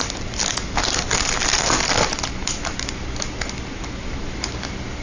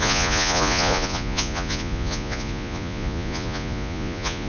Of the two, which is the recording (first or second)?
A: first